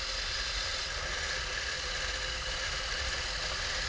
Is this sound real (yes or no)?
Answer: yes